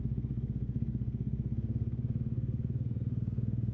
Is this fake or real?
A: fake